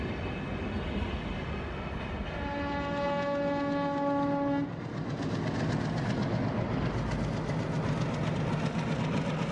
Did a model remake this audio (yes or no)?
no